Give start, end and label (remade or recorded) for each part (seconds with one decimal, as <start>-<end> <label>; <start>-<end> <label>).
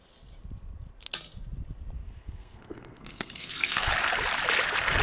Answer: 0.0-2.0 recorded; 2.0-3.9 remade; 3.9-5.0 recorded